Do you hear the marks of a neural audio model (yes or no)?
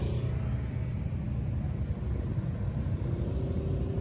no